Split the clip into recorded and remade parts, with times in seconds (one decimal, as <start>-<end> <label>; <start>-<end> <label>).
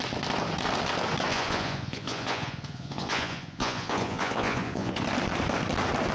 0.0-1.3 recorded; 1.3-5.0 remade; 5.0-6.1 recorded